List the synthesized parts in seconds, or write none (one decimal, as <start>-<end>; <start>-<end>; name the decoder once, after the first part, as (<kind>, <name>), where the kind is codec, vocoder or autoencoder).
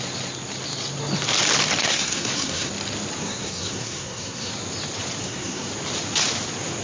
1.8-2.7 (codec, SNAC); 3.2-4.5; 5.2-5.7